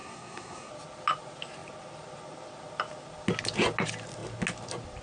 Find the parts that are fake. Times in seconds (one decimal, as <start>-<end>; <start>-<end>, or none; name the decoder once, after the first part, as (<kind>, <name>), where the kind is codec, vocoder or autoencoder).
0.0-0.7 (codec, SNAC)